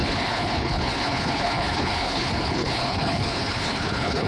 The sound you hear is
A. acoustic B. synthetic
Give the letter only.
B